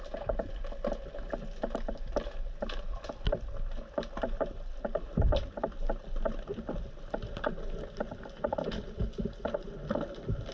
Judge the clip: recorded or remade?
recorded